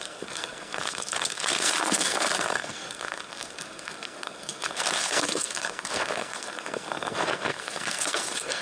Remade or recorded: remade